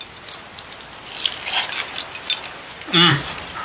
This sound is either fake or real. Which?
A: real